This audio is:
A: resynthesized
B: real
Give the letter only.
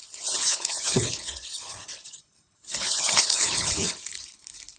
A